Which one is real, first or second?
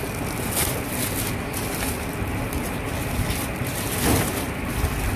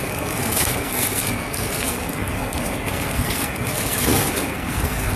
first